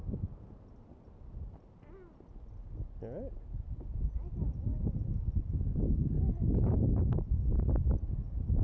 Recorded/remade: recorded